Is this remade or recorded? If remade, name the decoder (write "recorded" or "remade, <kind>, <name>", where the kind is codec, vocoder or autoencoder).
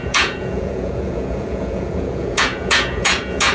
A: remade, vocoder, Vocos